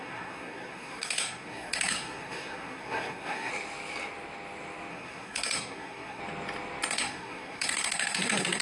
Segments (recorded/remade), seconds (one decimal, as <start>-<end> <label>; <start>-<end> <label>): 0.0-3.5 remade; 3.5-4.9 recorded; 4.9-6.2 remade; 6.2-6.9 recorded; 6.9-8.6 remade